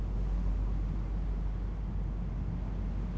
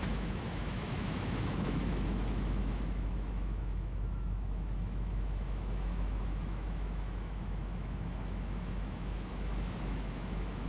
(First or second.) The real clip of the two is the first